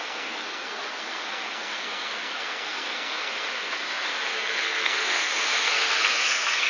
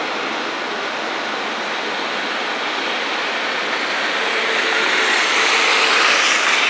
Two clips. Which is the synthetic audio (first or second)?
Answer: first